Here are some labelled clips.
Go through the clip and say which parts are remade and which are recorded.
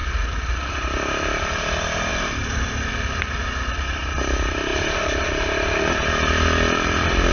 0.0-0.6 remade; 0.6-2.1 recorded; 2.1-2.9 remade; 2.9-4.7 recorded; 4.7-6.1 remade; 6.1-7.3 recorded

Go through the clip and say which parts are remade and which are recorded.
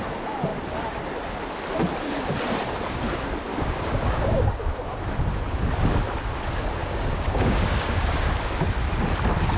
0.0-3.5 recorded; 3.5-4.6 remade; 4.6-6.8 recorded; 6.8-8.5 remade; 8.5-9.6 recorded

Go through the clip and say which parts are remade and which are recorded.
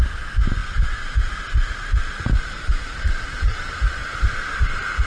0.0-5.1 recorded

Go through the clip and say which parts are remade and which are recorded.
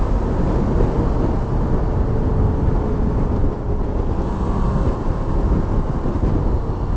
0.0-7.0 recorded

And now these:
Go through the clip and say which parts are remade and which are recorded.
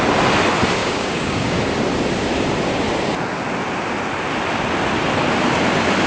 0.0-0.8 recorded; 0.8-1.6 remade; 1.6-6.1 recorded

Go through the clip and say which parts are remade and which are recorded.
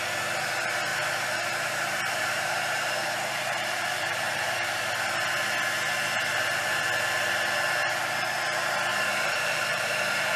0.0-0.9 recorded; 0.9-4.8 remade; 4.8-8.9 recorded; 8.9-9.8 remade; 9.8-10.4 recorded